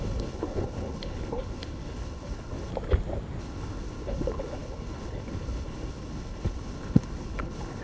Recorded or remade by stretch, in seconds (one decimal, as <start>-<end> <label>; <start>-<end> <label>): 0.0-2.7 remade; 2.7-3.4 recorded; 3.4-7.8 remade